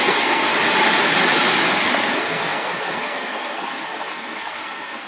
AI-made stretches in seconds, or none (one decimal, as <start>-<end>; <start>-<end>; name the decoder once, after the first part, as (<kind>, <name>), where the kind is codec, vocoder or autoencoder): 0.0-0.5 (codec, SNAC); 2.1-5.1